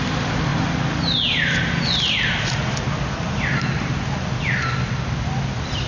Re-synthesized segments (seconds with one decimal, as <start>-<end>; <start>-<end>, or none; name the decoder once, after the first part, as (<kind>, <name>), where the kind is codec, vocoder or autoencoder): none